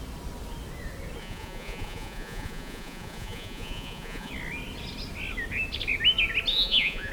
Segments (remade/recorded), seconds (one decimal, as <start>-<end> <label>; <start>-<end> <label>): 0.0-1.2 recorded; 1.2-4.3 remade; 4.3-6.5 recorded; 6.5-7.1 remade